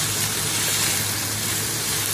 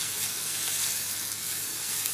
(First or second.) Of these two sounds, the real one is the first